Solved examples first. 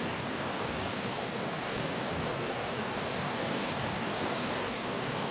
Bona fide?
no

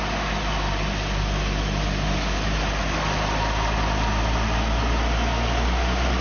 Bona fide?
yes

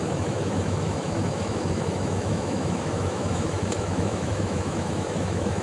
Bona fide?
no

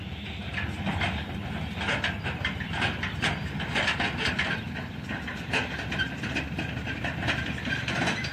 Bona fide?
yes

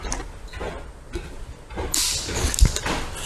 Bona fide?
yes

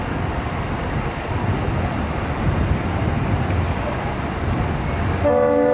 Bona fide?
yes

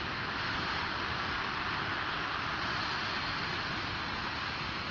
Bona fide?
yes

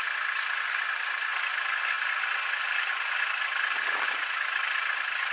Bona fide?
yes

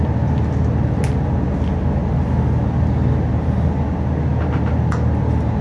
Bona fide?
yes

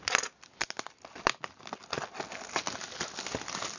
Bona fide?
yes